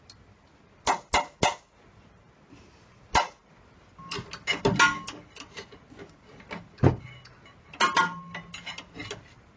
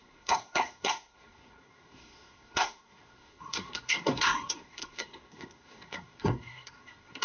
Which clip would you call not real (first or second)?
second